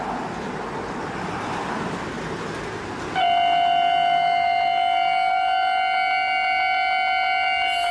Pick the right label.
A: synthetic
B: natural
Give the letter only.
B